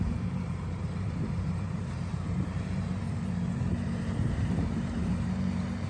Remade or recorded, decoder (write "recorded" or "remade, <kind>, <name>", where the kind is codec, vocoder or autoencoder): remade, vocoder, BigVGAN v2